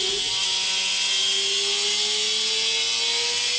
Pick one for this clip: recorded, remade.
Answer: recorded